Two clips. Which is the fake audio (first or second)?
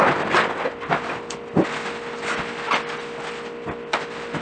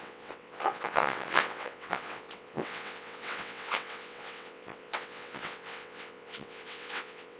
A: second